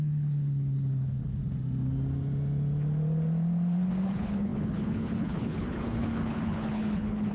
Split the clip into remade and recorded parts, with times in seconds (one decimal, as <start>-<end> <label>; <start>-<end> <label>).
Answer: 0.0-1.4 remade; 1.4-4.0 recorded; 4.0-7.3 remade